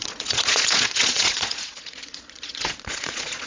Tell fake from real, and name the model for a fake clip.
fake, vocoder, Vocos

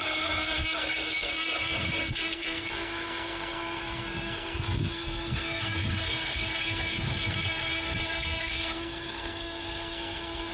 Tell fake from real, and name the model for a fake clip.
fake, codec, SNAC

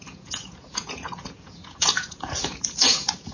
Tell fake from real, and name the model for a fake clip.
fake, vocoder, Vocos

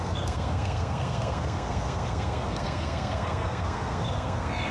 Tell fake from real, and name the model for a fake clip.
fake, codec, SNAC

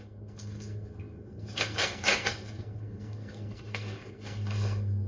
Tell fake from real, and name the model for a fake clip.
fake, codec, SNAC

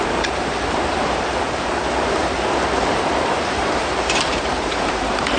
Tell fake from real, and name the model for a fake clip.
fake, vocoder, BigVGAN v2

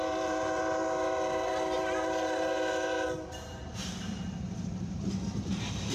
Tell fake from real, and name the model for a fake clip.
fake, vocoder, BigVGAN v2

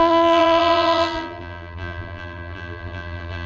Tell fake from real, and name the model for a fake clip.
fake, vocoder, BigVGAN v2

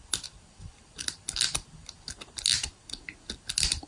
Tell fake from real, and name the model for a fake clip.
real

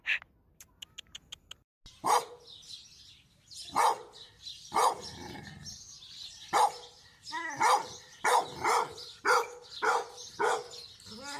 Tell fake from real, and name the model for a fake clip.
real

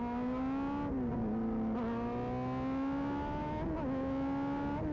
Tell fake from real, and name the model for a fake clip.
real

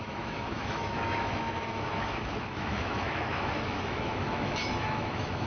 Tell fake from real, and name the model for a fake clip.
fake, autoencoder, DAC-VAE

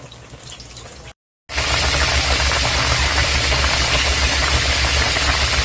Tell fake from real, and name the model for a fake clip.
real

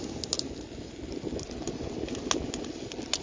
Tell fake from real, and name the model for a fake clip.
real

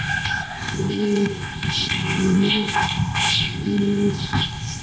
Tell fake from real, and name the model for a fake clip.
fake, codec, ZipCodec